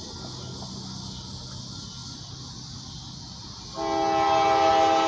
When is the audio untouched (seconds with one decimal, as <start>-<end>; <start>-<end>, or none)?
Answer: 0.0-5.1